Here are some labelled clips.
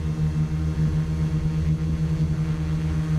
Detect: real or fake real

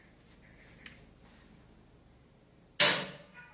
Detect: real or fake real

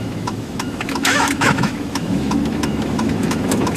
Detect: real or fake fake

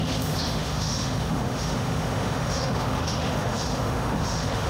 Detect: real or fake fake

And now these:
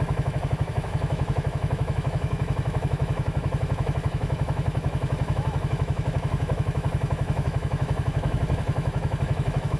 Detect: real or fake fake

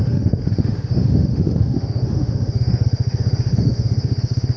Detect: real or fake fake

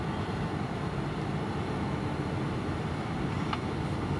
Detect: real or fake real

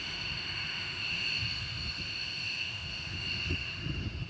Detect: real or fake fake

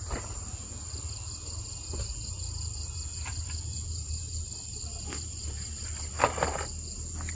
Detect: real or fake real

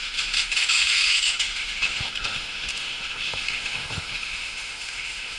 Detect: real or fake fake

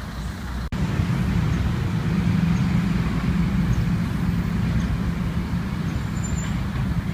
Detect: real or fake real